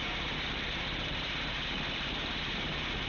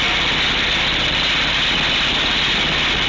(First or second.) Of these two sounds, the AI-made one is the first